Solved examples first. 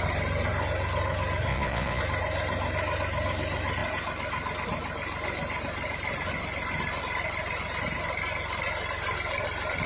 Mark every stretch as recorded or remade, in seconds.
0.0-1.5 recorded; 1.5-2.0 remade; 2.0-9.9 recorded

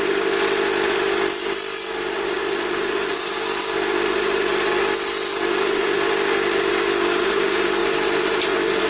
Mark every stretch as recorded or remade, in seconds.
0.0-8.9 recorded

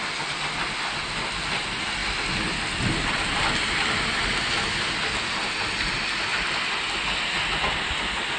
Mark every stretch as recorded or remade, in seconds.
0.0-8.4 recorded

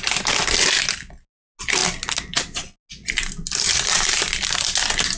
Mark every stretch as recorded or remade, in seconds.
0.0-5.2 recorded

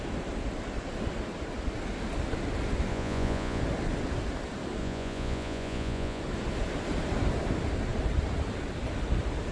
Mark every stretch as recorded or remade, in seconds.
0.0-2.9 recorded; 2.9-3.6 remade; 3.6-4.8 recorded; 4.8-6.2 remade; 6.2-9.5 recorded

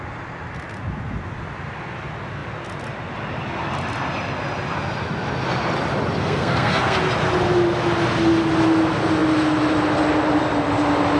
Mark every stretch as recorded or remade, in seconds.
0.0-6.2 recorded; 6.2-7.0 remade; 7.0-11.2 recorded

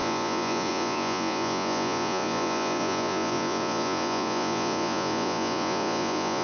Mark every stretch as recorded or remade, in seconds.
0.0-6.4 remade

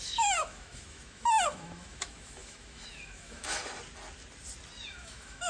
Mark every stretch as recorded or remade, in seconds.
0.0-3.6 remade; 3.6-4.9 recorded; 4.9-5.5 remade